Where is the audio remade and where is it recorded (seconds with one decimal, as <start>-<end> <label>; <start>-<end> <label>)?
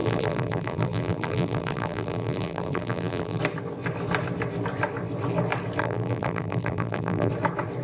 0.0-3.4 remade; 3.4-5.8 recorded; 5.8-7.3 remade; 7.3-7.8 recorded